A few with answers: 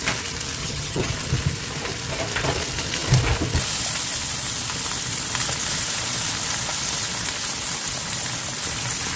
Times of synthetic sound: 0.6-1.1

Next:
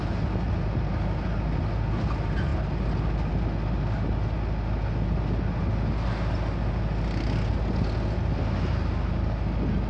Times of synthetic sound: none

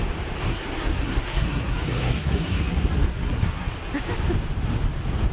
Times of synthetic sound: 0.5-3.7

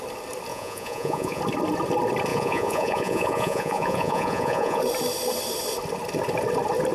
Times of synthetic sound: 0.5-1.4; 2.3-4.8

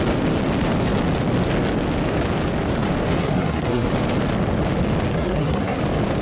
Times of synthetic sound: 3.2-3.9; 5.1-5.8